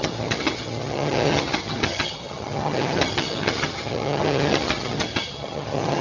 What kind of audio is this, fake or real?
fake